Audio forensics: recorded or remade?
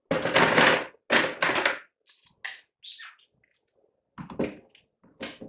recorded